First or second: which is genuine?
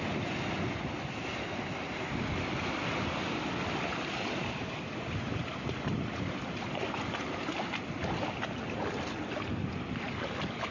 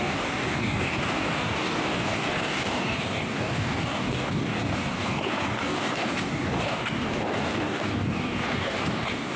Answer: first